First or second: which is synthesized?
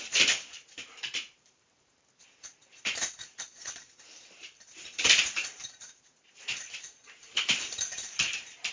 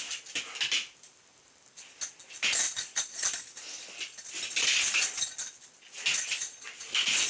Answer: first